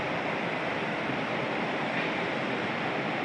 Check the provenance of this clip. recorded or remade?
remade